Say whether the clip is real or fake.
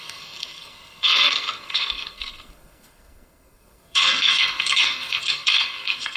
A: fake